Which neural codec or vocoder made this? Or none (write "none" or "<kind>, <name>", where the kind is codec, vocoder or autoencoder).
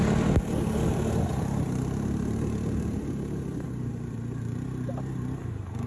none